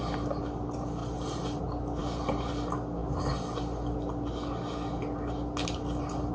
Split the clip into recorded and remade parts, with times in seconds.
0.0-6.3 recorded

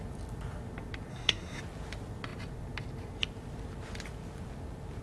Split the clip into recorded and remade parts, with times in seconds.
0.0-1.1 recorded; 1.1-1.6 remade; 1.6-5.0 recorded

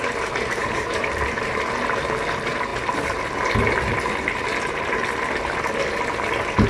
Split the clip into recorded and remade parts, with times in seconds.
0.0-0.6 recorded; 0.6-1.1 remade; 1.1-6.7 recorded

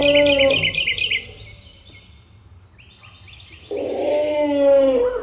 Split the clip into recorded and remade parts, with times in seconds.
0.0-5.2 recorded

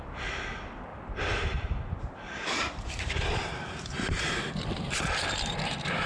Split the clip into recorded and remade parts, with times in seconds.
0.0-0.9 recorded; 0.9-4.5 remade; 4.5-6.1 recorded

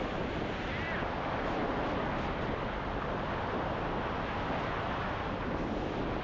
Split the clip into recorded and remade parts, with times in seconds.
0.0-6.2 recorded

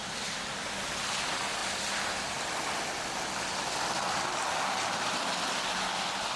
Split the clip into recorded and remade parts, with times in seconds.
0.0-6.4 recorded

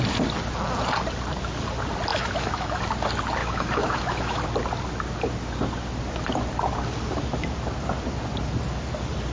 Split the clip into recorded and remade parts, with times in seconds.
0.0-2.1 recorded; 2.1-2.8 remade; 2.8-3.4 recorded; 3.4-4.4 remade; 4.4-9.3 recorded